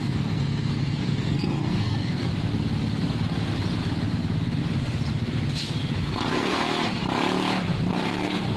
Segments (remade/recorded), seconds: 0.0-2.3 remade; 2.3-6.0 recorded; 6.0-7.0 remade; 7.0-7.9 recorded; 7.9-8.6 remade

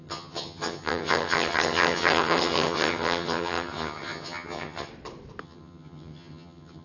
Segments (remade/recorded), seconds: 0.0-4.9 remade; 4.9-5.4 recorded; 5.4-6.8 remade

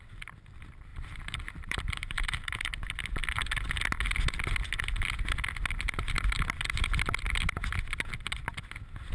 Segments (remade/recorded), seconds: 0.0-0.9 recorded; 0.9-2.9 remade; 2.9-9.1 recorded